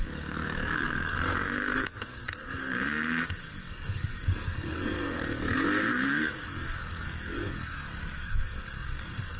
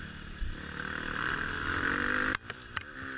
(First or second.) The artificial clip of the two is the first